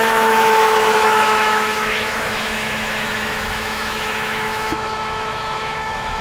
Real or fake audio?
fake